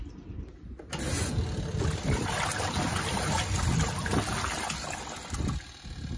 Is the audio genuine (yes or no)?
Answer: yes